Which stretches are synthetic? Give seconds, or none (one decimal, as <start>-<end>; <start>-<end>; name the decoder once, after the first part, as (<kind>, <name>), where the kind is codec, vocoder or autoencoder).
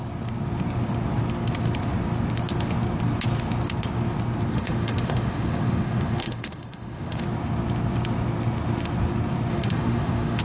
4.5-7.2 (autoencoder, DAC-VAE); 9.5-10.4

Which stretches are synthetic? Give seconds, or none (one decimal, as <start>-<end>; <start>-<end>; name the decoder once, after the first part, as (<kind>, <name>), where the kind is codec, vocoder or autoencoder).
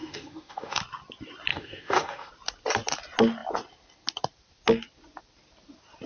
0.0-0.8 (autoencoder, DAC-VAE); 1.5-2.3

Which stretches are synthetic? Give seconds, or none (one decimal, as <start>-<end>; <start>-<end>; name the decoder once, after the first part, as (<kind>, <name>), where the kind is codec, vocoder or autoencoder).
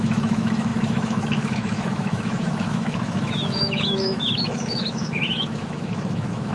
0.0-6.5 (autoencoder, DAC-VAE)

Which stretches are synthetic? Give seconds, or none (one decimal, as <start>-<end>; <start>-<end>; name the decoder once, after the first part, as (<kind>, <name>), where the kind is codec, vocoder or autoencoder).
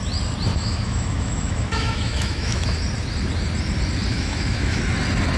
0.5-2.8 (autoencoder, DAC-VAE); 4.1-4.8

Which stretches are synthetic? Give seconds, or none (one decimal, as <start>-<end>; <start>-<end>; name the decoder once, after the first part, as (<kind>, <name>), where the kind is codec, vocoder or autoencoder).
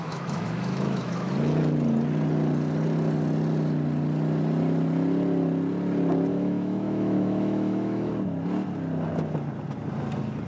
0.0-1.3 (autoencoder, DAC-VAE); 6.3-8.1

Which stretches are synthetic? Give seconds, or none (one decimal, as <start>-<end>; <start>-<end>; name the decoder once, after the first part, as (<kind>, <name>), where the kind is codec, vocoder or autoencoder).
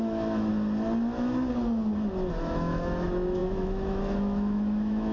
0.0-0.5 (autoencoder, DAC-VAE); 2.4-5.1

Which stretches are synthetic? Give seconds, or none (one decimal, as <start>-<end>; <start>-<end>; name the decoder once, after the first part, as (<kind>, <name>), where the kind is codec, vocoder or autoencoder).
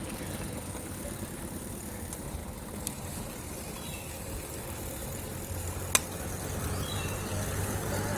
none